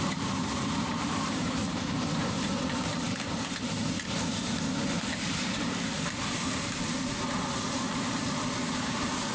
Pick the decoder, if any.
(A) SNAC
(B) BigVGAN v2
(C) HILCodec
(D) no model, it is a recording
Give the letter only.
B